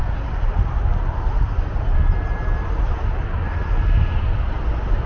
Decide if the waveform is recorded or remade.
recorded